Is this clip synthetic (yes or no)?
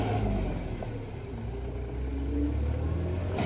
no